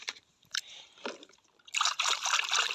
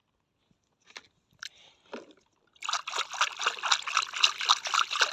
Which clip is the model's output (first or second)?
first